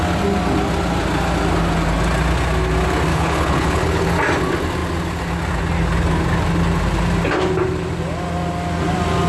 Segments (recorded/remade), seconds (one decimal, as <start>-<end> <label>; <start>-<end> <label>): 0.0-3.1 recorded; 3.1-4.0 remade; 4.0-9.3 recorded